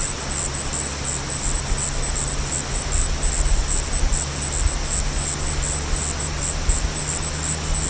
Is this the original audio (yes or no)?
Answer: yes